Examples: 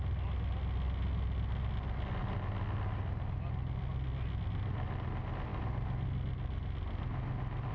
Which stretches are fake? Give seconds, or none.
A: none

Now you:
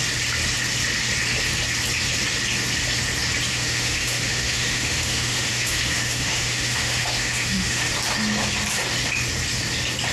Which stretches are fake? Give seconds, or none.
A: 3.5-7.9 (autoencoder, DAC-VAE)